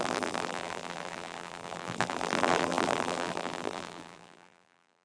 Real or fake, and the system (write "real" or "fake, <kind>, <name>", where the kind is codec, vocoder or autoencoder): fake, vocoder, BigVGAN v2